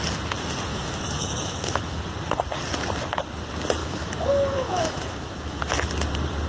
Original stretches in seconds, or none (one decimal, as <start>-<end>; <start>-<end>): 0.0-0.7; 2.0-3.8; 5.6-6.5